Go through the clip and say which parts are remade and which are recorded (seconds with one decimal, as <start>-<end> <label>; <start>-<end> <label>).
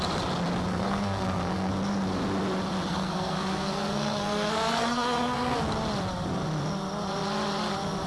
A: 0.0-0.7 recorded; 0.7-1.7 remade; 1.7-2.9 recorded; 2.9-5.7 remade; 5.7-8.1 recorded